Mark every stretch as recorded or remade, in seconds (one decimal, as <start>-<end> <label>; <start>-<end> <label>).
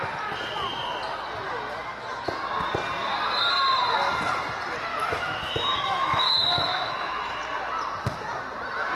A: 0.0-4.9 recorded; 4.9-7.4 remade; 7.4-8.9 recorded